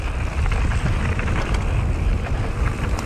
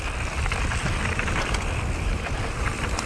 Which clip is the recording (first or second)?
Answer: first